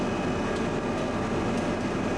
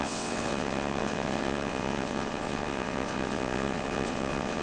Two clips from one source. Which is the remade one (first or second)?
second